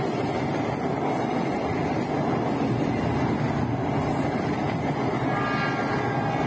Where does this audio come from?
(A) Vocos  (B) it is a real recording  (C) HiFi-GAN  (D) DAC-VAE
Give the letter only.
B